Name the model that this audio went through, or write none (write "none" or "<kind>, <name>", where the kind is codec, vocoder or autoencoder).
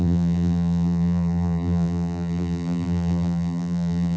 vocoder, BigVGAN v2